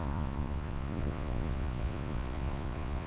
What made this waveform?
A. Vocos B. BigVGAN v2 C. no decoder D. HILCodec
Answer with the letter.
A